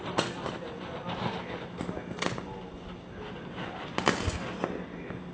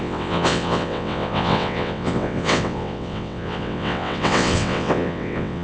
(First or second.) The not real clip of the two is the second